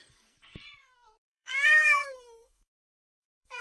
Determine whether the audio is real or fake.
fake